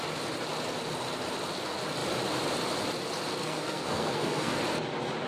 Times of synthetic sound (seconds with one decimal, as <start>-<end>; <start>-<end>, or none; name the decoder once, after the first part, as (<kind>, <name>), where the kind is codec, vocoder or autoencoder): 3.4-4.6 (codec, SNAC)